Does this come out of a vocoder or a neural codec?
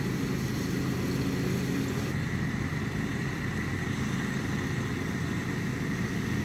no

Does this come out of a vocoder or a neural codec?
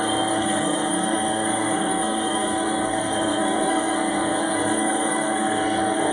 yes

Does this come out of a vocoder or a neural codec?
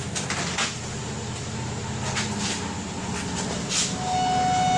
no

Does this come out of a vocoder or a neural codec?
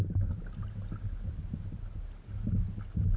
no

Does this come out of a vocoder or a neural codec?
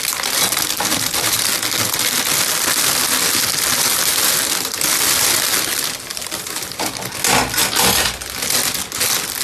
no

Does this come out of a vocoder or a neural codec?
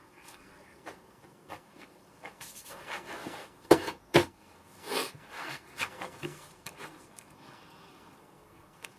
yes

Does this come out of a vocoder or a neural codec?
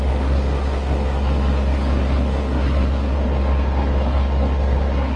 yes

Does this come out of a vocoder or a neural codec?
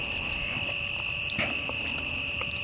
no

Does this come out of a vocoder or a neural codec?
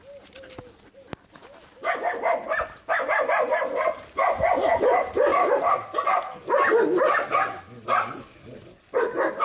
no